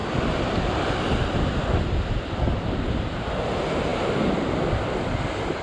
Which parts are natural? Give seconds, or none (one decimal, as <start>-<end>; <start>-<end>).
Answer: 0.0-5.6